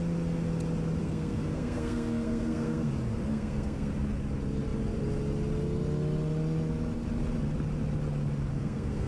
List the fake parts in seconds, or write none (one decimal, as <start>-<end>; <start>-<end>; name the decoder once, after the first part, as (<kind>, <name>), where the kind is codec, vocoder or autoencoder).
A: 1.0-2.9 (codec, SNAC); 3.3-3.9; 8.5-9.1